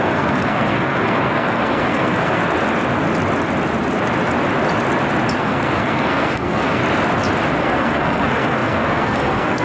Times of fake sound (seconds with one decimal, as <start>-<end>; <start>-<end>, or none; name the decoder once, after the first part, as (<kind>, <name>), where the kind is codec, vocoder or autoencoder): 0.0-2.4 (codec, SNAC); 5.4-6.8; 7.6-9.6